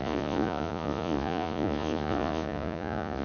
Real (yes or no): no